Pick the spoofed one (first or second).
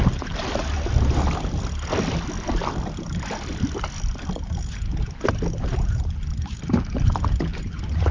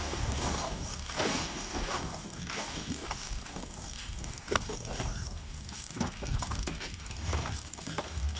second